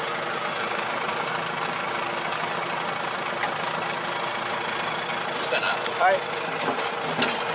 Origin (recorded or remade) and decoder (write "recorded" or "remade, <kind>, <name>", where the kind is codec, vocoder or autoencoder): recorded